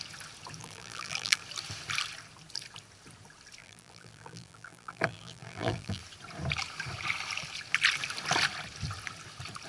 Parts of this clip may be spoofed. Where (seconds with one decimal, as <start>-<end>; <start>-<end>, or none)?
0.6-1.4; 3.6-6.0